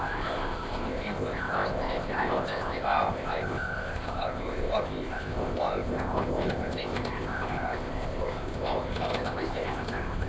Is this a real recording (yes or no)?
no